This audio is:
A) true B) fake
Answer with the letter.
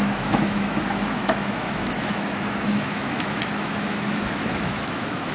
B